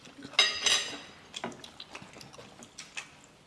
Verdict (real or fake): real